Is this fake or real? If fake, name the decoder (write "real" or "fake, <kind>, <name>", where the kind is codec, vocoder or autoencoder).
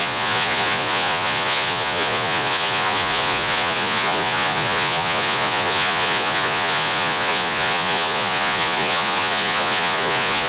fake, vocoder, Vocos